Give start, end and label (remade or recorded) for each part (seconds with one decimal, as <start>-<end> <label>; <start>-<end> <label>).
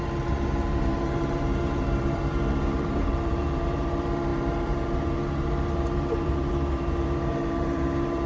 0.0-8.3 remade